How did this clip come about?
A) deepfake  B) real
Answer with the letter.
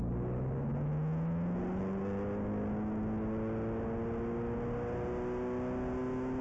B